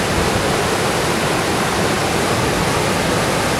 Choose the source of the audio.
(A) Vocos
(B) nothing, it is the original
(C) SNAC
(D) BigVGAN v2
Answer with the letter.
B